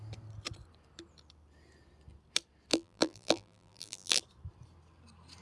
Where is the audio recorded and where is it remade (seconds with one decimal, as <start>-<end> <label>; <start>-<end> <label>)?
0.0-2.7 recorded; 2.7-4.2 remade; 4.2-5.4 recorded